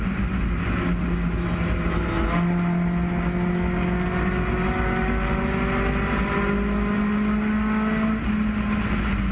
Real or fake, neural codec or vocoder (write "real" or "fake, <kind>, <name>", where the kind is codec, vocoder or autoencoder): real